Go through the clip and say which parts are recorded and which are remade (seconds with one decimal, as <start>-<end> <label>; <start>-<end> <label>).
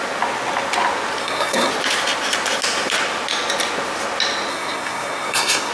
0.0-1.2 recorded; 1.2-1.7 remade; 1.7-4.5 recorded; 4.5-5.7 remade